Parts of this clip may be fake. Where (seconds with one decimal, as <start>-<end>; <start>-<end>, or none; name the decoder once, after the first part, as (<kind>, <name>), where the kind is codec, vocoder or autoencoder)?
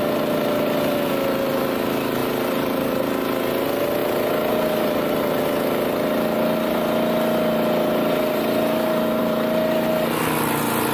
2.2-3.0 (vocoder, BigVGAN v2)